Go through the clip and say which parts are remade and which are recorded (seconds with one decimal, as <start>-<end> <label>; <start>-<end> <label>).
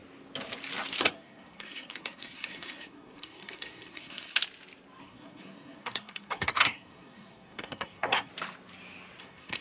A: 0.0-1.0 recorded; 1.0-4.4 remade; 4.4-5.0 recorded; 5.0-8.3 remade; 8.3-9.2 recorded; 9.2-9.6 remade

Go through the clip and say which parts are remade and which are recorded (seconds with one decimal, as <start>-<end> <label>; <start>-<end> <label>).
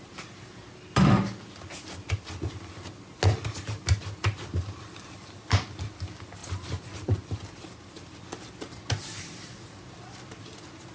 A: 0.0-6.4 recorded; 6.4-7.4 remade; 7.4-10.9 recorded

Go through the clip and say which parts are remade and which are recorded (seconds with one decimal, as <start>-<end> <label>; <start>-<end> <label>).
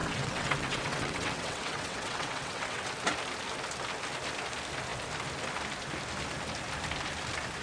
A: 0.0-2.9 remade; 2.9-7.6 recorded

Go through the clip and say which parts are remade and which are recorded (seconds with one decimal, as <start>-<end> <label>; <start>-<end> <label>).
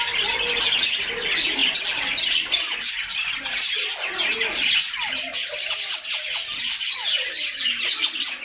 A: 0.0-5.3 recorded; 5.3-6.0 remade; 6.0-8.4 recorded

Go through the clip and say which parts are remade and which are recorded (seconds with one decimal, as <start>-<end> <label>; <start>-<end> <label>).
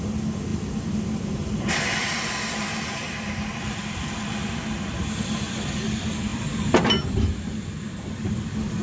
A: 0.0-0.5 recorded; 0.5-4.6 remade; 4.6-6.3 recorded; 6.3-8.3 remade; 8.3-8.8 recorded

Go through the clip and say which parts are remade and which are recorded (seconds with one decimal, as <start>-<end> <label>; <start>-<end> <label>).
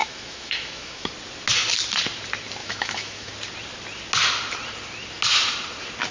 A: 0.0-1.1 remade; 1.1-2.6 recorded; 2.6-3.3 remade; 3.3-6.1 recorded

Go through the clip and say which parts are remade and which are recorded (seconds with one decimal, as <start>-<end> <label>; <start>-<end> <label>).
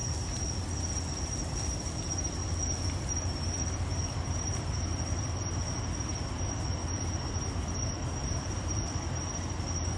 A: 0.0-10.0 recorded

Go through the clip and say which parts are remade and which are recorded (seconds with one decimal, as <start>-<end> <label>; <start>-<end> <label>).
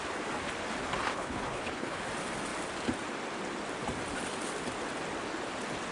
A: 0.0-1.1 recorded; 1.1-2.0 remade; 2.0-5.9 recorded